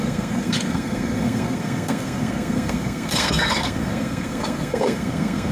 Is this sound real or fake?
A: fake